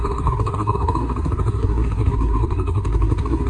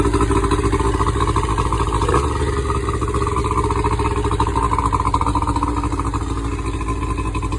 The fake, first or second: first